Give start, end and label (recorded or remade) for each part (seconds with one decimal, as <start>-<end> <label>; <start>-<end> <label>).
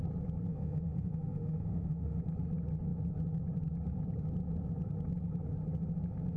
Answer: 0.0-0.5 recorded; 0.5-2.2 remade; 2.2-6.4 recorded